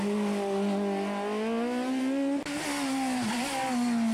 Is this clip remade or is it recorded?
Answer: recorded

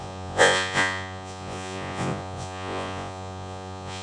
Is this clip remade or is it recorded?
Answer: remade